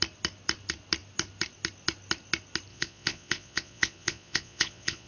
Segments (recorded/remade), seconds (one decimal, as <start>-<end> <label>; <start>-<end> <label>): 0.0-2.7 recorded; 2.7-5.1 remade

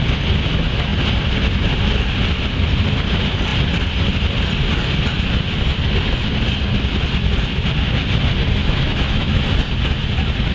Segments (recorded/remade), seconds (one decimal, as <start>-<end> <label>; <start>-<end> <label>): 0.0-8.6 recorded; 8.6-9.4 remade; 9.4-10.5 recorded